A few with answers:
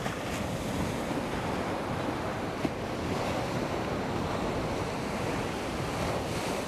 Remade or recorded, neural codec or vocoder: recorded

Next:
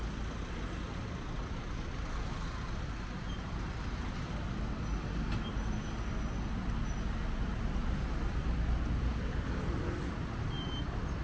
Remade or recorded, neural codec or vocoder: recorded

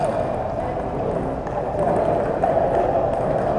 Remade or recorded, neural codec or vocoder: recorded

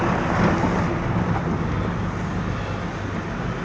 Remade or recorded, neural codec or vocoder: recorded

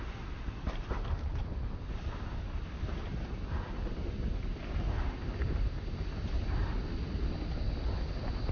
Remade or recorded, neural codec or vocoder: recorded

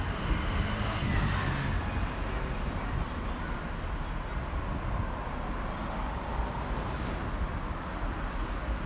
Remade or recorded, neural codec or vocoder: recorded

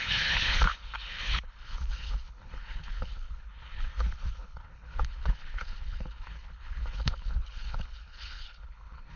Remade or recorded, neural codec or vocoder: remade, codec, HILCodec